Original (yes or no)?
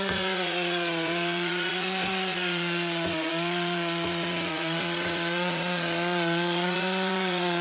no